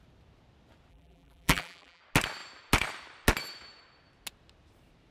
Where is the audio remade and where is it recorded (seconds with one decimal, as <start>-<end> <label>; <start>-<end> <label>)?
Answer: 0.0-0.9 recorded; 0.9-2.0 remade; 2.0-5.1 recorded